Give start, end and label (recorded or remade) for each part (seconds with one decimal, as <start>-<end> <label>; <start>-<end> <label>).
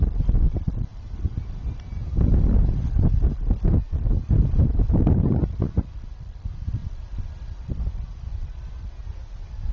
0.0-9.7 recorded